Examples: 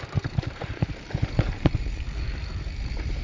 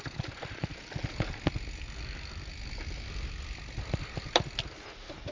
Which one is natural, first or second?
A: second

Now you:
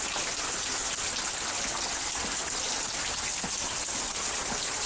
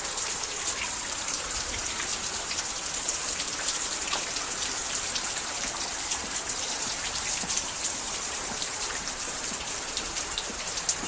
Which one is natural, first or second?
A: first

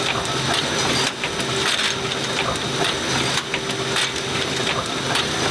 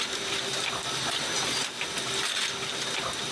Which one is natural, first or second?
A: first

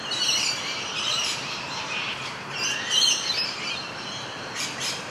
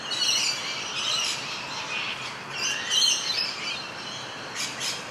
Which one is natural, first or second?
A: second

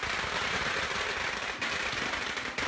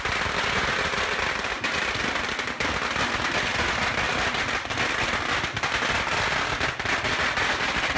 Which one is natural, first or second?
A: second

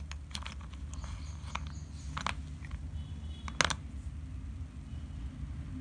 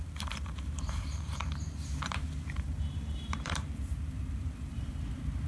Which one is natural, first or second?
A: first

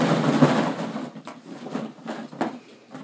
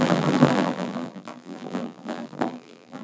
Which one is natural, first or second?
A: first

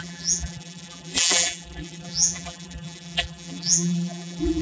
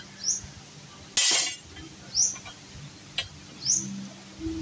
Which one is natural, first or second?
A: second